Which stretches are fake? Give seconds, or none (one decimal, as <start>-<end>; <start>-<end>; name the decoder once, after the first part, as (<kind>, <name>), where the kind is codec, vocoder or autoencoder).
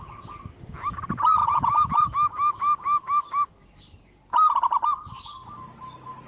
1.4-3.5 (autoencoder, DAC-VAE)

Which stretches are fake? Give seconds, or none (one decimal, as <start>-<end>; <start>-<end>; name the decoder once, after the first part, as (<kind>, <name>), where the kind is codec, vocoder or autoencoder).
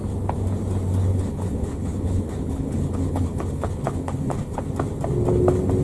1.1-4.6 (codec, HILCodec)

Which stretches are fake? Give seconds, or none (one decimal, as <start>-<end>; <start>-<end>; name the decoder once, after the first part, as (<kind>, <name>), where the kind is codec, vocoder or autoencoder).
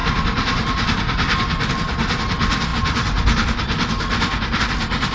none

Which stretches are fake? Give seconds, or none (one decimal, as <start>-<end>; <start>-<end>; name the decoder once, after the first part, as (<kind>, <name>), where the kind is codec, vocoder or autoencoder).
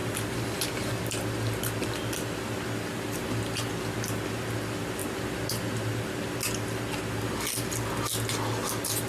0.0-0.9 (vocoder, BigVGAN v2)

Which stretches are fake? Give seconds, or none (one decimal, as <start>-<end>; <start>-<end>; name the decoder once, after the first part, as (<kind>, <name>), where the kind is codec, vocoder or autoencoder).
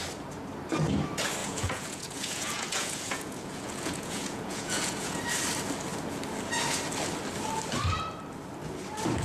1.4-5.2 (vocoder, Vocos)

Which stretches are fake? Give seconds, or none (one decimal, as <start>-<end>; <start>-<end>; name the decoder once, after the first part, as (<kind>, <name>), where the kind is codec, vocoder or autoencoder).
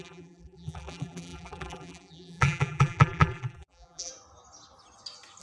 0.0-4.1 (vocoder, BigVGAN v2)